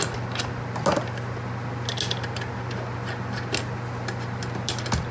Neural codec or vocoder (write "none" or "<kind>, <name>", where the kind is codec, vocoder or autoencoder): none